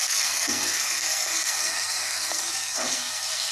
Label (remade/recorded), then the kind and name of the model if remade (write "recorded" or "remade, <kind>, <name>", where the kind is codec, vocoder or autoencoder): remade, codec, SNAC